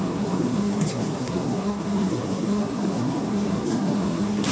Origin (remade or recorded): remade